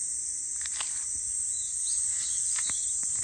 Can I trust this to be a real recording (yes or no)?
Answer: yes